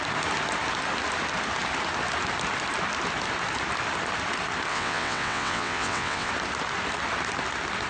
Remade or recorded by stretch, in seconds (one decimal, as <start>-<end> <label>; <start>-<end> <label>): 0.0-4.7 recorded; 4.7-6.3 remade; 6.3-7.9 recorded